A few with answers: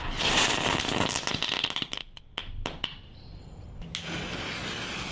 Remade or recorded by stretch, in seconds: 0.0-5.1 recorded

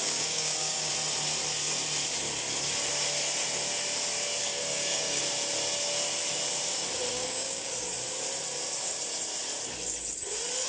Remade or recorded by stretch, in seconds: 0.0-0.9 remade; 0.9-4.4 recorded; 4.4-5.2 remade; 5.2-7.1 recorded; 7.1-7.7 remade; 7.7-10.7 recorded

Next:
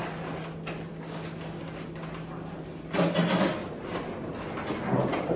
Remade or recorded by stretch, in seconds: 0.0-0.9 recorded; 0.9-1.6 remade; 1.6-5.4 recorded